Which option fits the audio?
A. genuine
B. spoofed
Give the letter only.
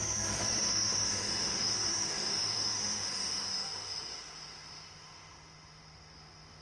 B